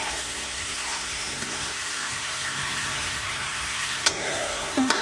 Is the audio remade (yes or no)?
yes